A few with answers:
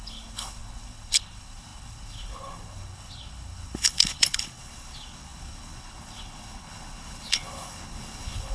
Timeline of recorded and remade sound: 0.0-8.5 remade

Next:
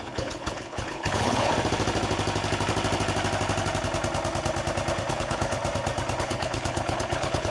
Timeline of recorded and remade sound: 0.0-1.5 remade; 1.5-5.1 recorded; 5.1-5.6 remade; 5.6-6.2 recorded; 6.2-7.5 remade

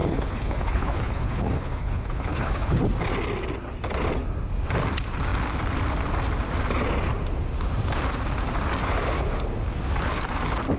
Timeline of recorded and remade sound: 0.0-2.8 remade; 2.8-10.8 recorded

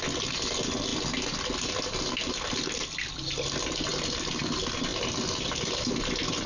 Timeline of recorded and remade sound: 0.0-6.5 recorded

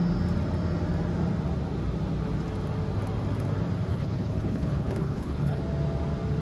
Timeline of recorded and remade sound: 0.0-3.9 recorded; 3.9-5.6 remade; 5.6-6.4 recorded

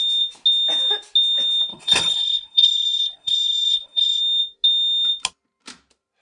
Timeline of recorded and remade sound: 0.0-1.7 recorded; 1.7-4.2 remade; 4.2-6.2 recorded